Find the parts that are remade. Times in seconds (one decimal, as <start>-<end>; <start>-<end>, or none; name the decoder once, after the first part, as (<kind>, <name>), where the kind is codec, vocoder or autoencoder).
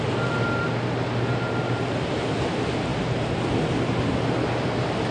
none